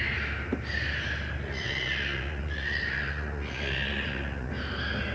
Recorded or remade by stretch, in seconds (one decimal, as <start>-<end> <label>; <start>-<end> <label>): 0.0-1.4 recorded; 1.4-4.5 remade; 4.5-5.1 recorded

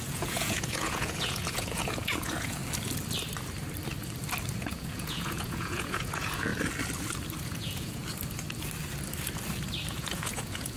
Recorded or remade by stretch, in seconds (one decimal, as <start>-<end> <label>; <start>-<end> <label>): 0.0-2.6 remade; 2.6-4.6 recorded; 4.6-6.5 remade; 6.5-7.4 recorded; 7.4-8.0 remade; 8.0-9.9 recorded; 9.9-10.8 remade

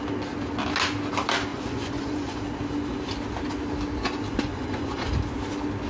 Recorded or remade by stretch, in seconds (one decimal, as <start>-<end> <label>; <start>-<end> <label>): 0.0-1.5 recorded; 1.5-2.4 remade; 2.4-4.3 recorded; 4.3-5.1 remade; 5.1-5.9 recorded

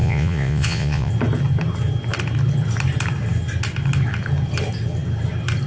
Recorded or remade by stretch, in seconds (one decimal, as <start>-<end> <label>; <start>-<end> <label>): 0.0-1.1 remade; 1.1-5.7 recorded

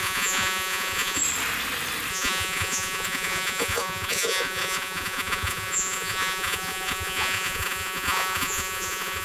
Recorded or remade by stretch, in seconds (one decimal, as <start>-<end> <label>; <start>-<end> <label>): 0.0-1.2 remade; 1.2-2.1 recorded; 2.1-9.2 remade